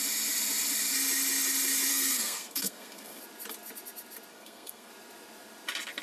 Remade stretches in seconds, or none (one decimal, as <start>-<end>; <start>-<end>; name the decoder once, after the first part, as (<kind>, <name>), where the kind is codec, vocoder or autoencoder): 1.9-3.2 (codec, SNAC); 4.3-4.9